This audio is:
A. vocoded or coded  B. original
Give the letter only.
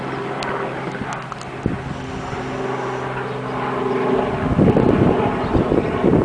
B